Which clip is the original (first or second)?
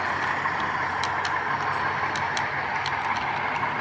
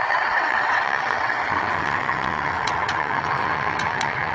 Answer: first